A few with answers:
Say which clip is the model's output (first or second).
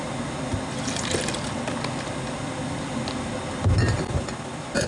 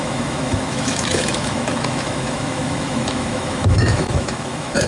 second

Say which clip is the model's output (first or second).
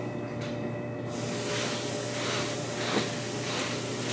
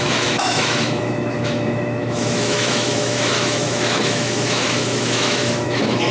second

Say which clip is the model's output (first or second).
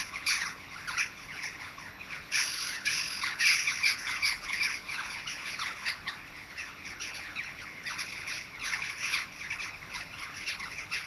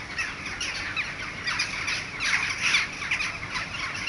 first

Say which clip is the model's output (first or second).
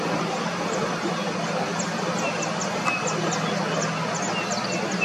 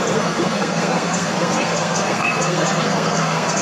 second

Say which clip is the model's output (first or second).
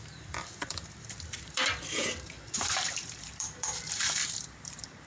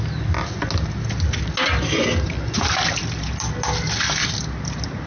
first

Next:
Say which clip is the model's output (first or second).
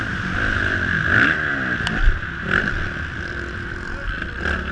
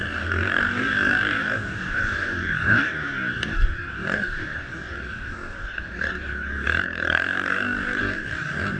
second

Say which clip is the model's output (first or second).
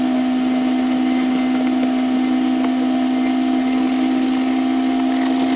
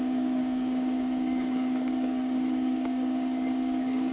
second